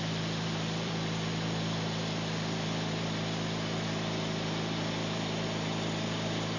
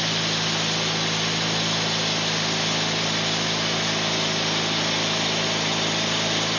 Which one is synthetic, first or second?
first